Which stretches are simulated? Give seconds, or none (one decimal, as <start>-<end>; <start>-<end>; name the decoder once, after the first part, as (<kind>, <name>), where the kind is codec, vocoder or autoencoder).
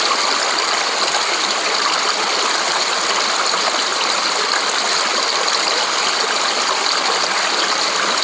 none